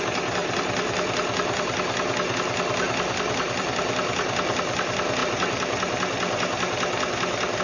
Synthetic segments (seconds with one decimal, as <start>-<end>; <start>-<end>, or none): none